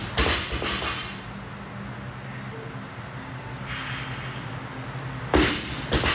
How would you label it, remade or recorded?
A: recorded